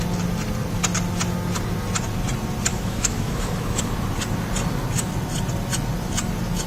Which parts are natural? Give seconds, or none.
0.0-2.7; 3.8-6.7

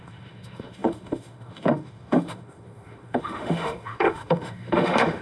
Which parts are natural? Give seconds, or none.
none

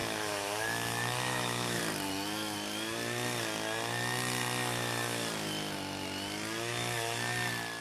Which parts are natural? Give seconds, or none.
1.8-7.8